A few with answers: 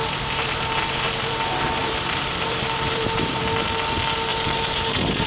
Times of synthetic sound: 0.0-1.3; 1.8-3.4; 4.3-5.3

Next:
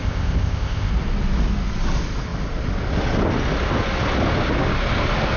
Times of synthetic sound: 0.0-0.9

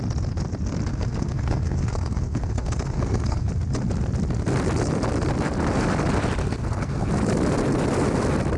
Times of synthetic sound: 0.9-3.5; 6.4-7.1